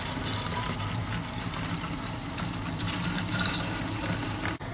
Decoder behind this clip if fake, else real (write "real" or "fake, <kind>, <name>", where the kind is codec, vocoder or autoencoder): fake, vocoder, BigVGAN v2